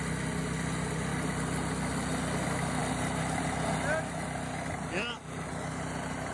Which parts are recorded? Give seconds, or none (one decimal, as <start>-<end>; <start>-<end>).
0.0-6.3